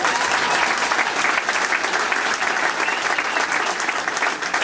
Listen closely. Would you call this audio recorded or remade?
recorded